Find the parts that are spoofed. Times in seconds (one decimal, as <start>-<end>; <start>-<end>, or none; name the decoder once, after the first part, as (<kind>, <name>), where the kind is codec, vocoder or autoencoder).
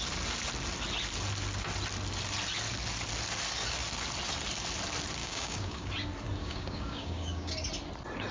5.2-5.9 (codec, DAC); 6.4-7.5